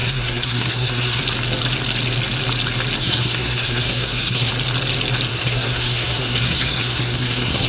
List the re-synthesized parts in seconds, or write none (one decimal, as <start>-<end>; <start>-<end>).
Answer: 0.0-1.2; 3.0-4.5; 5.3-7.7